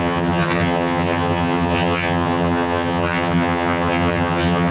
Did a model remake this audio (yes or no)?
yes